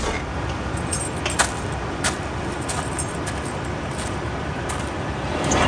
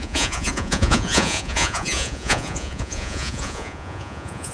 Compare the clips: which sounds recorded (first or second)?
first